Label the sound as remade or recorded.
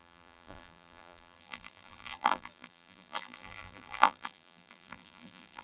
remade